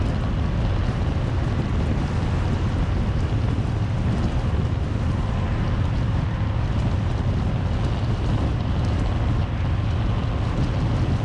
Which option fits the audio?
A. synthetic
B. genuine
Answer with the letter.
B